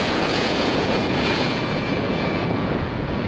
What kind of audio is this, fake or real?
fake